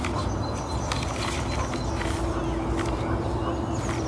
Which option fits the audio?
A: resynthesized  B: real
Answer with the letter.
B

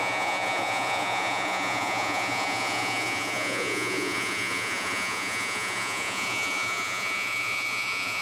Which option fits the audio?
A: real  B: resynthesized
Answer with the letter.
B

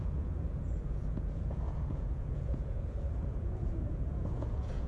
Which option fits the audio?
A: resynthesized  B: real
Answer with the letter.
A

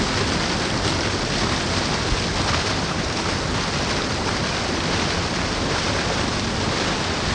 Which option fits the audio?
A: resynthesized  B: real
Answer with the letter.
B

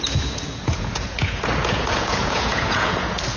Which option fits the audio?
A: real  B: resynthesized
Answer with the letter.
B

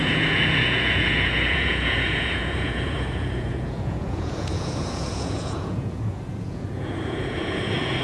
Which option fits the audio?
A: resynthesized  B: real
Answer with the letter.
A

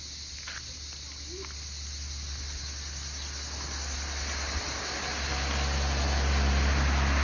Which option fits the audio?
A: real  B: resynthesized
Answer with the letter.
A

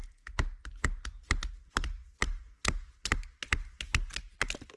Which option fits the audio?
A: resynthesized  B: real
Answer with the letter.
B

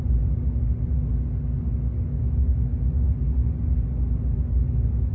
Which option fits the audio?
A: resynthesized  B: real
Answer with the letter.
B